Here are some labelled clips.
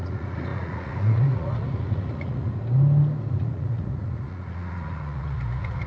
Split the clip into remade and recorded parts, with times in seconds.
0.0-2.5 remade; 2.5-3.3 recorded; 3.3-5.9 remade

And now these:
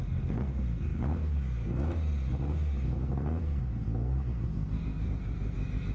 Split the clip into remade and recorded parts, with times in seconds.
0.0-5.9 remade

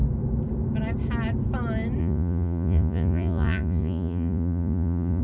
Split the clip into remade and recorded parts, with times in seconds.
0.0-2.0 recorded; 2.0-5.2 remade

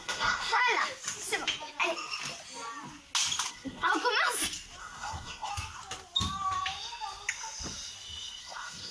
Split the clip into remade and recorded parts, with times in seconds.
0.0-0.6 remade; 0.6-3.5 recorded; 3.5-3.9 remade; 3.9-4.8 recorded; 4.8-5.5 remade; 5.5-8.4 recorded; 8.4-8.9 remade

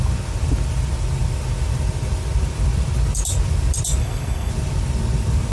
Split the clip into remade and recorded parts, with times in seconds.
0.0-4.0 recorded; 4.0-4.5 remade; 4.5-5.5 recorded

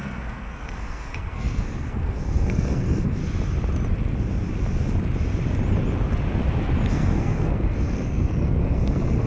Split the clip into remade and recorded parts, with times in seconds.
0.0-3.2 remade; 3.2-6.9 recorded; 6.9-9.3 remade

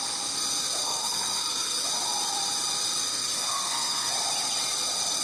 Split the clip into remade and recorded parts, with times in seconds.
0.0-0.8 recorded; 0.8-1.8 remade; 1.8-3.1 recorded; 3.1-4.1 remade; 4.1-5.2 recorded